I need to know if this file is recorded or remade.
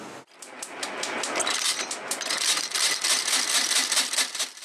recorded